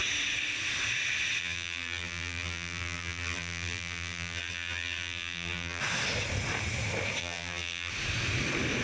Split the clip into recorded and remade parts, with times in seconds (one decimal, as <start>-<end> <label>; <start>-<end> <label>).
0.0-1.4 recorded; 1.4-5.8 remade; 5.8-7.2 recorded; 7.2-7.9 remade; 7.9-8.8 recorded